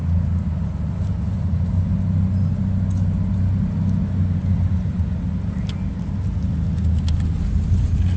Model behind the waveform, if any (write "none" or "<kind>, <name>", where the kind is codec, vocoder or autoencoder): none